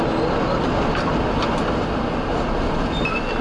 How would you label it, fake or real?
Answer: real